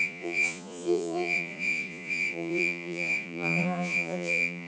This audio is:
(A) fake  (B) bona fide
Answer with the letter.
A